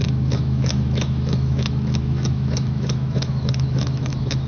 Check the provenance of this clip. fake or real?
fake